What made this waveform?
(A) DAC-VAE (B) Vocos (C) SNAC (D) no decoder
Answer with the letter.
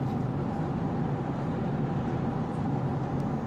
D